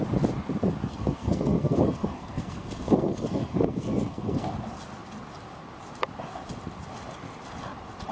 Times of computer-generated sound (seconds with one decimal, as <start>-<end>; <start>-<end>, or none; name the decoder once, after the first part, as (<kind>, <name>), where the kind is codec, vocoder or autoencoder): 0.9-4.5 (codec, SNAC)